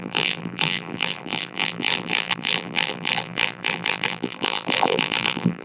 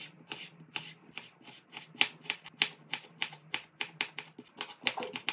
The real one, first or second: second